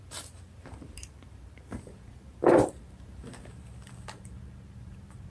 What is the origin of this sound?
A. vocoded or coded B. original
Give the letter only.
A